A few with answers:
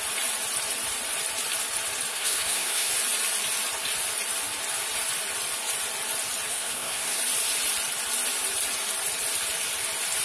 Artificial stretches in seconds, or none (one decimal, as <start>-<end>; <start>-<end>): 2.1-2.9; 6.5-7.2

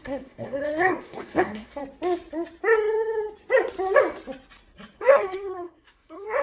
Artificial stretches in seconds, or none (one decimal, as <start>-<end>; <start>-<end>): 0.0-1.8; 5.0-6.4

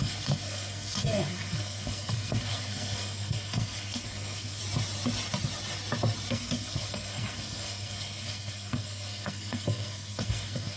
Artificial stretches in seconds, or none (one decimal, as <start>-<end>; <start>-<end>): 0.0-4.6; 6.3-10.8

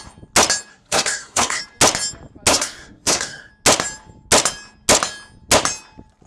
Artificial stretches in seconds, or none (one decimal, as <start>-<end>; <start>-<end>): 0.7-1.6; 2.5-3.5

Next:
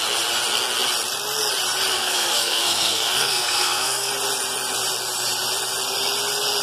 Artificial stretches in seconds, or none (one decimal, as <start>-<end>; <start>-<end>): 1.9-4.1